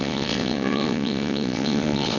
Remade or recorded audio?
remade